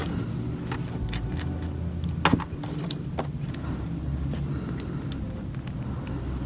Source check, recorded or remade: recorded